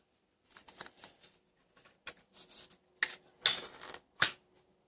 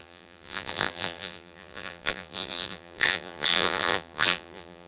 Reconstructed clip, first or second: second